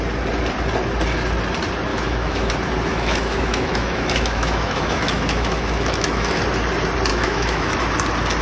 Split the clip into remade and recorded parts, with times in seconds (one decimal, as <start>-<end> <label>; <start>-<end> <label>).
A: 0.0-1.9 recorded; 1.9-2.5 remade; 2.5-2.9 recorded; 2.9-6.4 remade; 6.4-7.1 recorded; 7.1-7.8 remade; 7.8-8.4 recorded